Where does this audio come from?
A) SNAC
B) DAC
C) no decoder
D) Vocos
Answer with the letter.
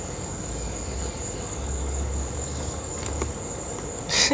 B